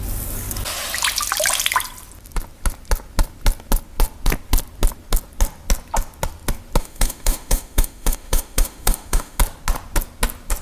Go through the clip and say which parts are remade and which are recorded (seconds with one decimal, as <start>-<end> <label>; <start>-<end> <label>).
0.0-6.8 recorded; 6.8-9.4 remade; 9.4-10.6 recorded